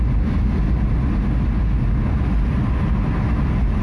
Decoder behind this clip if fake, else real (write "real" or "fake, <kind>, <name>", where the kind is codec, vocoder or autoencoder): real